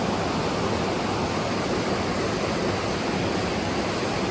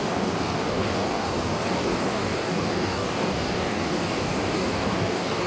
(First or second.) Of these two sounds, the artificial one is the second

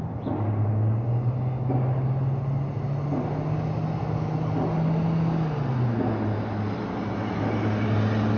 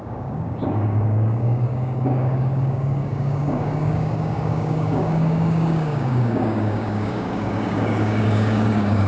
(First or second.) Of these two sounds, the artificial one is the second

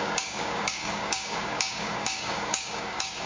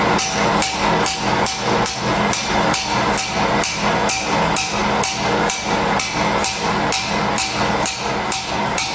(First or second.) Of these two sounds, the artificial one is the first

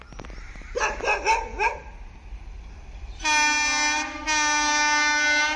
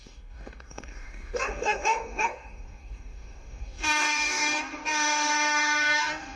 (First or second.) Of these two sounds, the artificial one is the second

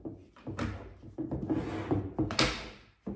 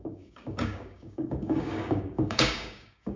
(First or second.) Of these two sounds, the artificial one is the second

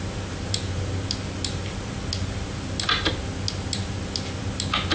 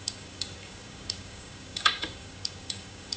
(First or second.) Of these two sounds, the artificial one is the second